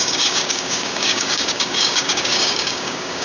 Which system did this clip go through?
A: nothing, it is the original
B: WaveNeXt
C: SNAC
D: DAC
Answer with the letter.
D